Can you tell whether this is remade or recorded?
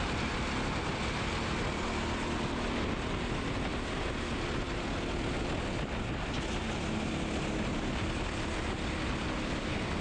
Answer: recorded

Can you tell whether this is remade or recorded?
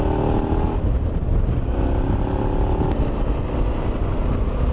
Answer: recorded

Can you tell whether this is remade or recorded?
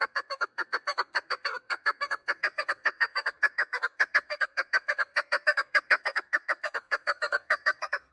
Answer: remade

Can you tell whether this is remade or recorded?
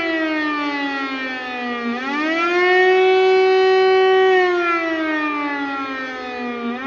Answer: recorded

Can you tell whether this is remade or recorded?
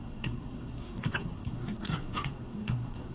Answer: remade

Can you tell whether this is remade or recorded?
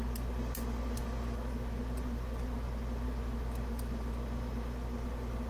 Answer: recorded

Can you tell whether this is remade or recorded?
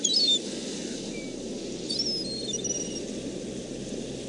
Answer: recorded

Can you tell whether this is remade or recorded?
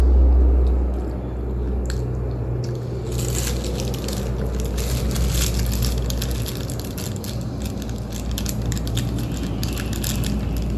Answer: recorded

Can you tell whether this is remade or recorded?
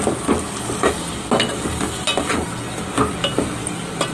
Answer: recorded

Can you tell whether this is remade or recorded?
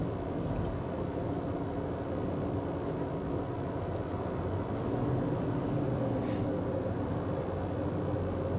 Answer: recorded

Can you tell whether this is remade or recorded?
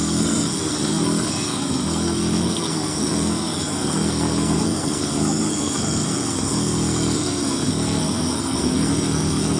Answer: remade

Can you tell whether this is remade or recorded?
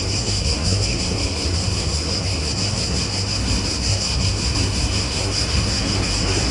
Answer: remade